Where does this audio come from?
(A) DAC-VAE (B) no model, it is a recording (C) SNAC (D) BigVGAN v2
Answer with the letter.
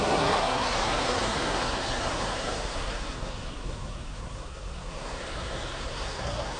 C